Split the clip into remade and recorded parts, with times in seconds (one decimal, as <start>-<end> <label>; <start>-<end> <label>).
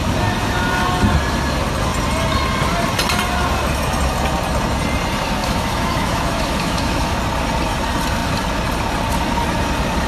0.0-5.4 recorded; 5.4-7.2 remade; 7.2-10.1 recorded